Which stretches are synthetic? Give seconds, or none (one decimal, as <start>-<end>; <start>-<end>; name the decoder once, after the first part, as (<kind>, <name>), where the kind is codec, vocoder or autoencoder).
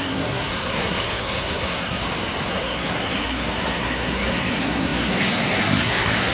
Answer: 0.0-2.0 (codec, SNAC); 2.5-6.3